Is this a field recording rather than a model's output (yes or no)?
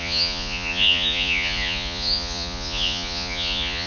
no